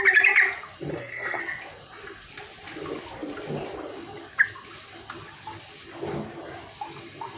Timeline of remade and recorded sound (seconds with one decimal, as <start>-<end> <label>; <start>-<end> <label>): 0.0-0.9 recorded; 0.9-1.4 remade; 1.4-7.4 recorded